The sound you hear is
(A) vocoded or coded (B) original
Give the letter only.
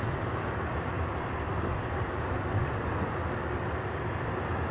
B